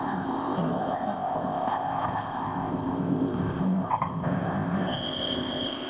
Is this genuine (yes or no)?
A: no